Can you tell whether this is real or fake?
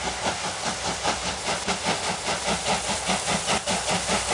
real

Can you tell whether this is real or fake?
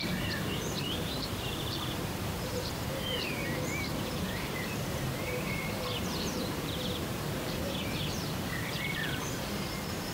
fake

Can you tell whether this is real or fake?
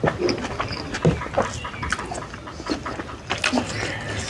real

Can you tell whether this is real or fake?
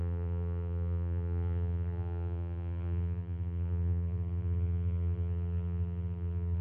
fake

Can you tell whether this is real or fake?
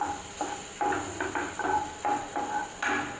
real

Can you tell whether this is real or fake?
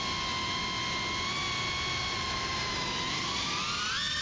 real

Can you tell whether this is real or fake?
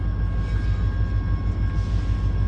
real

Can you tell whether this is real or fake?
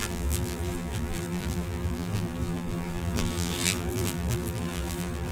fake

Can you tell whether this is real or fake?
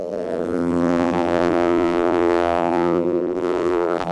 fake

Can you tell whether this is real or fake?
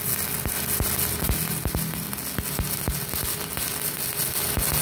real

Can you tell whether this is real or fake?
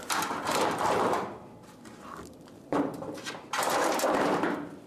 fake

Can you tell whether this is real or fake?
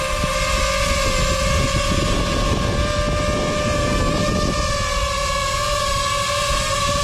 real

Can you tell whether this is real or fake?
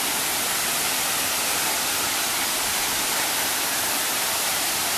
real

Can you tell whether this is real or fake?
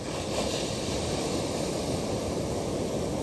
fake